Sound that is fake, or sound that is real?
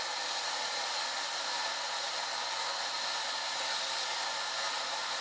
real